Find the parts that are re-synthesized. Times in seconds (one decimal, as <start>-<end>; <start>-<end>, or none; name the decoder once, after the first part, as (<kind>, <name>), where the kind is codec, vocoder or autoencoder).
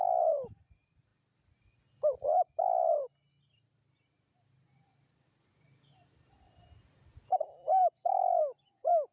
none